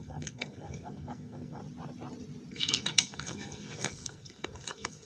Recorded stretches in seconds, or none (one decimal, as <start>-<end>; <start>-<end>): 1.6-2.5